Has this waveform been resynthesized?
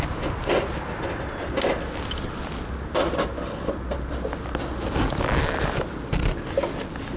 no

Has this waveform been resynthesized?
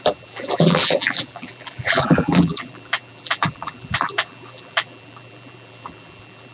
yes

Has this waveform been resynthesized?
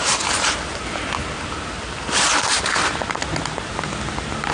no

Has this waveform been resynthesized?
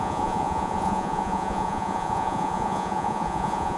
yes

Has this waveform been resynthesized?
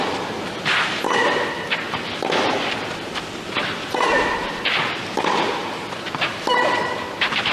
yes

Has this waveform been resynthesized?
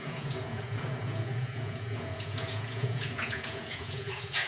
yes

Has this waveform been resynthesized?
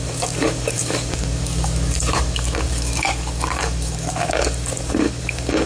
yes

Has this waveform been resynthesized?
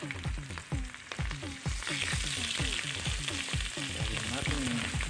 no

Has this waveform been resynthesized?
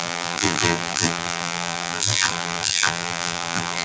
yes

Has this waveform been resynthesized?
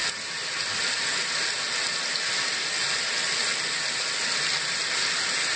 no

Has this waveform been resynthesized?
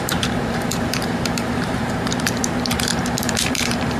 yes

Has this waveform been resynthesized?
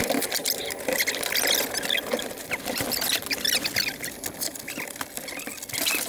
no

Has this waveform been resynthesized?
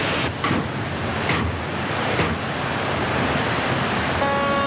no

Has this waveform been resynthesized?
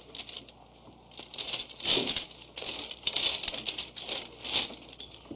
no